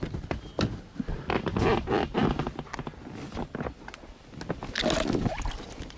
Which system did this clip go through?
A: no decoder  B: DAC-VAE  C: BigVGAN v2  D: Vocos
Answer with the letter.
A